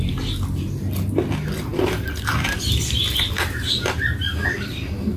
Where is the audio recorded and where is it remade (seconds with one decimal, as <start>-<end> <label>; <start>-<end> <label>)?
0.0-1.7 recorded; 1.7-4.8 remade; 4.8-5.2 recorded